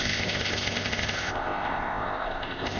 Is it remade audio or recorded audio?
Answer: remade